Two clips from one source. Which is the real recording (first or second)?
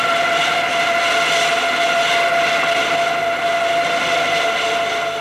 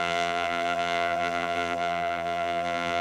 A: first